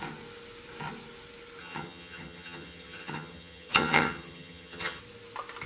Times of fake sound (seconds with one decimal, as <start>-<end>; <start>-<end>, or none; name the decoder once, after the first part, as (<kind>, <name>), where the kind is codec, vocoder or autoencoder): 1.6-5.0 (vocoder, HiFi-GAN)